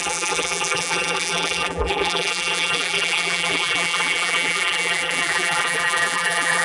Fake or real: fake